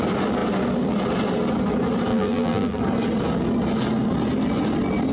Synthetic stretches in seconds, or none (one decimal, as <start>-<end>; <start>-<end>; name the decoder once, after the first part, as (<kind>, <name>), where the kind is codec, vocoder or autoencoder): 2.1-2.8 (vocoder, BigVGAN v2)